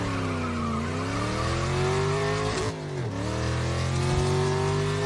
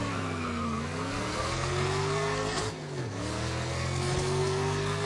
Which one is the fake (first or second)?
second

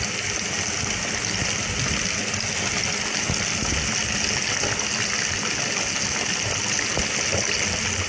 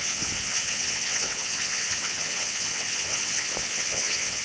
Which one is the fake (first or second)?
second